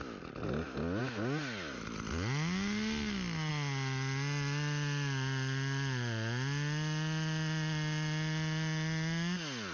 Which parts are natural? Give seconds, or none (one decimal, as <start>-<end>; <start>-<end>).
0.0-9.7